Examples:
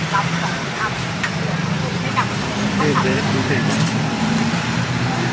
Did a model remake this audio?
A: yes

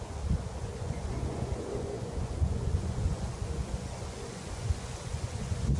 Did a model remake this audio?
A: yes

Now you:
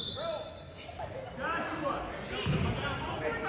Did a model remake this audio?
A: no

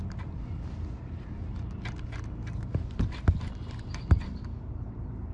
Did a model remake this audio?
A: no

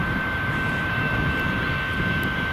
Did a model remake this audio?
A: no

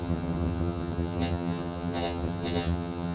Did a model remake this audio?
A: yes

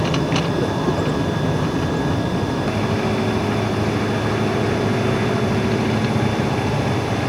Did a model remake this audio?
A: no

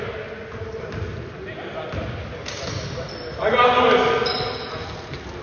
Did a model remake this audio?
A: no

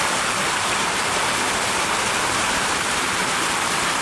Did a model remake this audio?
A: yes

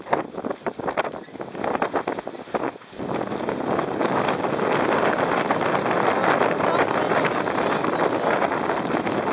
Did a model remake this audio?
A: no